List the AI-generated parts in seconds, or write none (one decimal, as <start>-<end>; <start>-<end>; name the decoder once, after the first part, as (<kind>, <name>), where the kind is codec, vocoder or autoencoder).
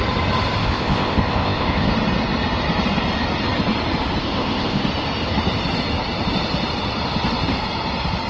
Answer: 0.6-1.9 (codec, ZipCodec); 4.2-4.8